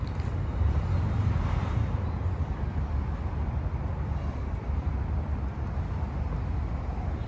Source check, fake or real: real